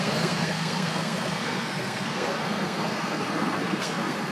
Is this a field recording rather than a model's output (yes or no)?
no